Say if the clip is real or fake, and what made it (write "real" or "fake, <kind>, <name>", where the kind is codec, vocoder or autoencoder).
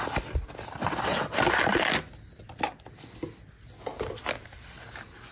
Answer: real